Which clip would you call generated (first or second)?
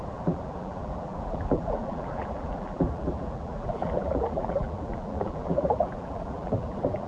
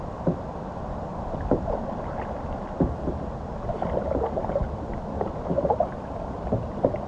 first